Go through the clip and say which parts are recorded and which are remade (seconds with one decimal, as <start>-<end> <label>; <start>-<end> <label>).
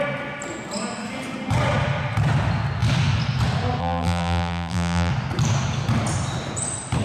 0.0-3.8 recorded; 3.8-5.1 remade; 5.1-7.0 recorded